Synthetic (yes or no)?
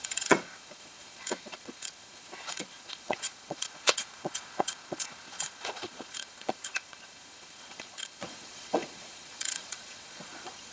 yes